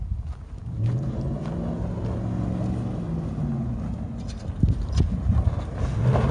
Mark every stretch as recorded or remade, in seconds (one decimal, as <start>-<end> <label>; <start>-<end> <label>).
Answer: 0.0-0.6 recorded; 0.6-1.7 remade; 1.7-6.3 recorded